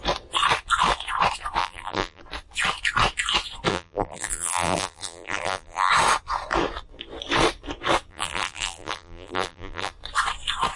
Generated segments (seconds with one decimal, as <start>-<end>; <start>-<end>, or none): 1.6-2.2; 3.7-5.9; 8.1-9.9